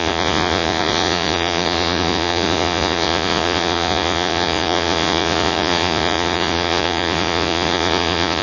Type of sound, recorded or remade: remade